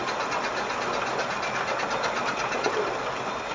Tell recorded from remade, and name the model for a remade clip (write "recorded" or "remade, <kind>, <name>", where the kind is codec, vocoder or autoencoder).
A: recorded